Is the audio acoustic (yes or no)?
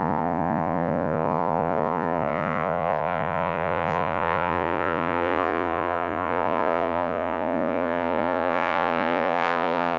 no